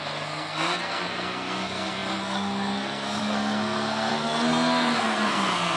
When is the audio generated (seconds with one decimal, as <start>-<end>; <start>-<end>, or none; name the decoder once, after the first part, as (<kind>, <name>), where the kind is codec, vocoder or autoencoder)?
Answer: 0.0-5.8 (codec, SNAC)